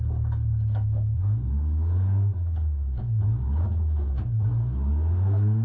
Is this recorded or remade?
remade